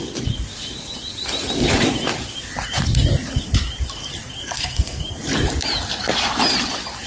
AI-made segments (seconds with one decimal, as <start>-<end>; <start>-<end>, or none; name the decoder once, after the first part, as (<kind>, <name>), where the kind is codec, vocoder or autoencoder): 4.4-5.0 (codec, SNAC)